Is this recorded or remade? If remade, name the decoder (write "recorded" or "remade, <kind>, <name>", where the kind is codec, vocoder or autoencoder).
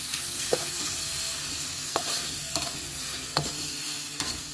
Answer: remade, codec, SNAC